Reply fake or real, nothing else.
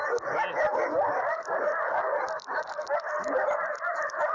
real